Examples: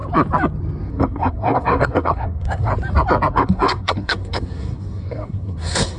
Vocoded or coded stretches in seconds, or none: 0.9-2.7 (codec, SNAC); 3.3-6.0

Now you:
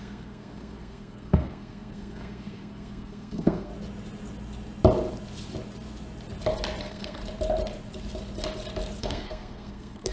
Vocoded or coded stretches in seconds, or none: 0.0-3.7 (codec, SNAC); 6.8-7.2; 9.0-10.1

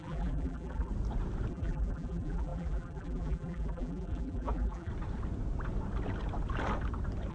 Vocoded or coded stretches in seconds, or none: 0.0-0.9 (vocoder, BigVGAN v2); 1.5-4.9